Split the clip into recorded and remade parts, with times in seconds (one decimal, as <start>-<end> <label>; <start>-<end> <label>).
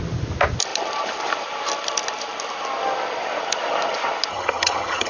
0.0-4.3 recorded; 4.3-5.1 remade